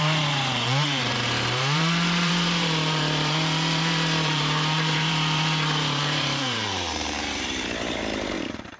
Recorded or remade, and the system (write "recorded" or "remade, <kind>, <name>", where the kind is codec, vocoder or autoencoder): remade, vocoder, BigVGAN v2